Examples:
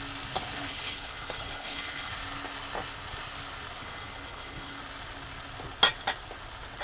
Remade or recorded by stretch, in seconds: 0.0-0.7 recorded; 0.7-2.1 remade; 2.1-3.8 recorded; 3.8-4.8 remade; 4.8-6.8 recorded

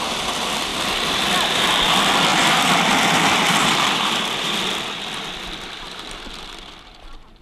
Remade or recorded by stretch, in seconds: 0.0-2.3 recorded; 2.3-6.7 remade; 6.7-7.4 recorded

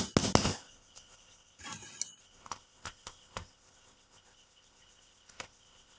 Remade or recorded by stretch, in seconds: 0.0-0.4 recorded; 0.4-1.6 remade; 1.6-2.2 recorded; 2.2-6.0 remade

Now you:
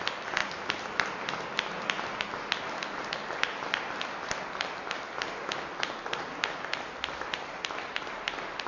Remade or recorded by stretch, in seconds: 0.0-8.7 recorded

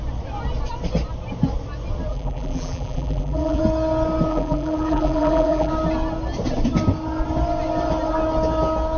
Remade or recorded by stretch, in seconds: 0.0-2.1 recorded; 2.1-3.6 remade; 3.6-4.3 recorded; 4.3-5.7 remade; 5.7-9.0 recorded

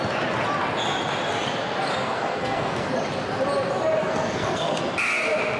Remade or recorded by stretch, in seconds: 0.0-1.9 recorded; 1.9-2.9 remade; 2.9-4.0 recorded; 4.0-4.8 remade; 4.8-5.6 recorded

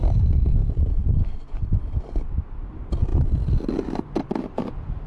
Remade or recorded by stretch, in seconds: 0.0-5.1 recorded

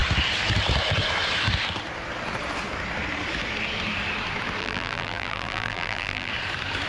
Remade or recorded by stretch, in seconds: 0.0-4.6 recorded; 4.6-6.3 remade; 6.3-6.9 recorded